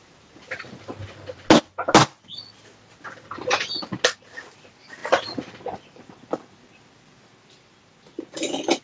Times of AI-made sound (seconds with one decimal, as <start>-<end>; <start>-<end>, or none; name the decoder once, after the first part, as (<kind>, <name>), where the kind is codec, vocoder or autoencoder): none